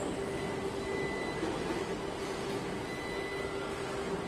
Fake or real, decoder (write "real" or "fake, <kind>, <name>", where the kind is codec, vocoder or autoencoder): real